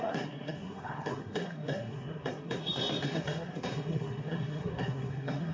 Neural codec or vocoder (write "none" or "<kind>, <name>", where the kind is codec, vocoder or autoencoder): codec, SNAC